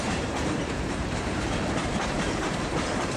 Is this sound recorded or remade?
remade